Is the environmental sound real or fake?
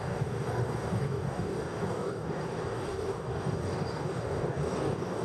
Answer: fake